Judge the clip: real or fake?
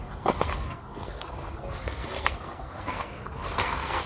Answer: fake